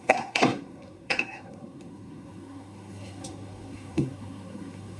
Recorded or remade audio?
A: remade